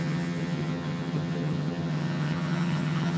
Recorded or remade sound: remade